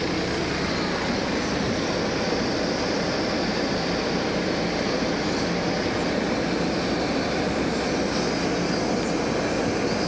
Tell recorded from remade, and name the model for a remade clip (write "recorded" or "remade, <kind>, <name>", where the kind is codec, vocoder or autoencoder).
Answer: recorded